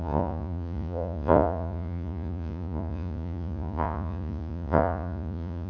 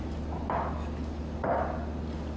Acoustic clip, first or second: second